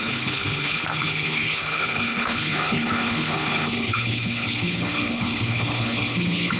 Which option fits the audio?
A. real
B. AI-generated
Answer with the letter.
B